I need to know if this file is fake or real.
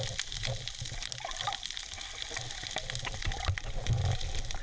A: real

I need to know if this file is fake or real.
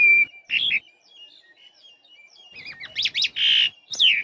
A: real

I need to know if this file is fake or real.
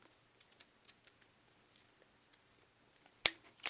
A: real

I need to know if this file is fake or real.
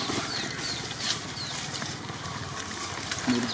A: real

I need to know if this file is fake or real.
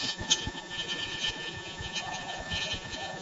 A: fake